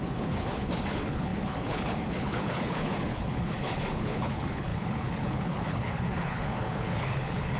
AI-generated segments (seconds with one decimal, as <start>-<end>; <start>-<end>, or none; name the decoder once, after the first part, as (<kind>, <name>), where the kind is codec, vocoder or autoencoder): 0.0-7.6 (codec, HILCodec)